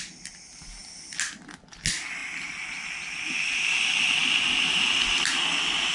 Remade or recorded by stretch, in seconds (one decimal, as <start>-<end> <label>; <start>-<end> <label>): 0.0-5.9 recorded

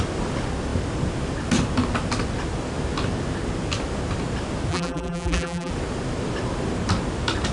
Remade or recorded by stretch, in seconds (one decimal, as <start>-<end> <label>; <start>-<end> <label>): 0.0-4.7 recorded; 4.7-5.7 remade; 5.7-7.5 recorded